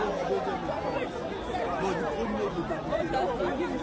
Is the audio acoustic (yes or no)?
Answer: yes